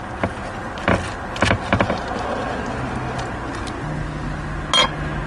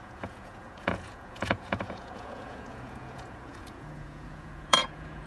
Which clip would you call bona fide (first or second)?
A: first